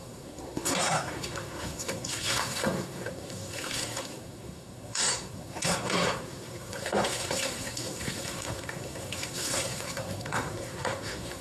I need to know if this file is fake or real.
fake